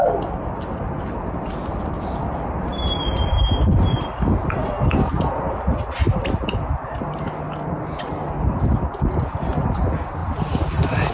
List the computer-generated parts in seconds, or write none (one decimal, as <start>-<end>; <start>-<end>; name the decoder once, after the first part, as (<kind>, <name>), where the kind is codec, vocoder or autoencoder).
none